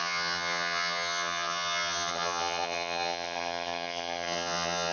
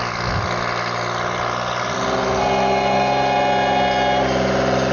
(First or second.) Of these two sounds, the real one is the second